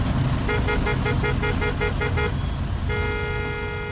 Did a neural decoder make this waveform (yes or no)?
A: no